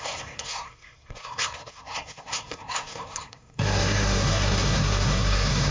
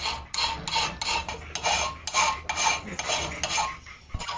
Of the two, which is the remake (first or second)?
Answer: first